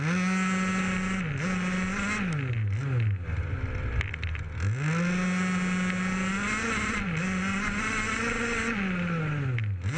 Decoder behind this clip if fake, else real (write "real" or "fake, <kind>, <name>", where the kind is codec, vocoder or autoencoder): real